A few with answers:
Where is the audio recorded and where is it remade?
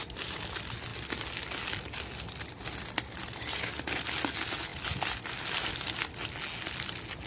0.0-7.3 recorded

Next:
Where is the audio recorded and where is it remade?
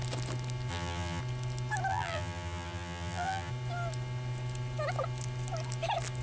0.0-0.7 recorded; 0.7-1.2 remade; 1.2-1.9 recorded; 1.9-3.5 remade; 3.5-6.2 recorded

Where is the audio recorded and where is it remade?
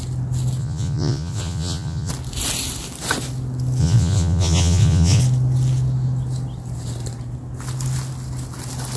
0.0-0.6 recorded; 0.6-2.1 remade; 2.1-3.8 recorded; 3.8-5.2 remade; 5.2-9.0 recorded